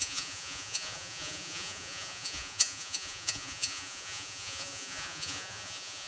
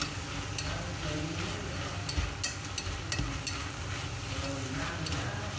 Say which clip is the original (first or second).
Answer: second